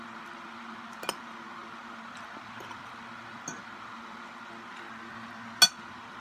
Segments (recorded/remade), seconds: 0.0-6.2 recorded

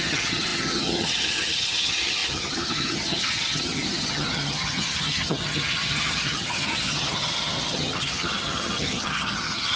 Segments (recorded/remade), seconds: 0.0-9.8 remade

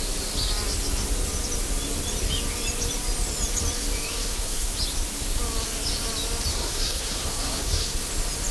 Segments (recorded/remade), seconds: 0.0-4.1 recorded; 4.1-4.7 remade; 4.7-6.5 recorded; 6.5-8.1 remade; 8.1-8.5 recorded